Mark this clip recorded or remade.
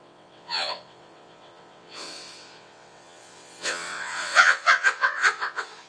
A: remade